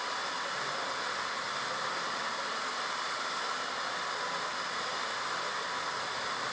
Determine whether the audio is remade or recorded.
recorded